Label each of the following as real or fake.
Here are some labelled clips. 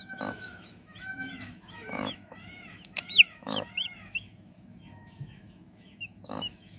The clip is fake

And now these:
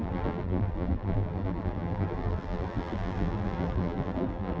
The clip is fake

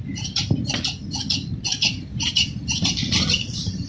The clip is real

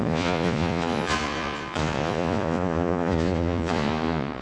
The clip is fake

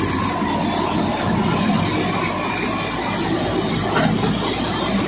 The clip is real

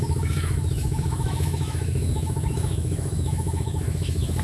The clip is fake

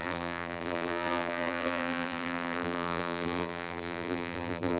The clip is fake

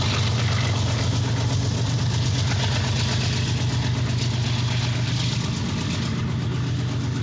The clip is real